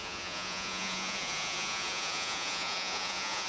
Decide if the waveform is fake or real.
fake